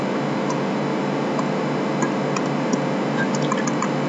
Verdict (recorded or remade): recorded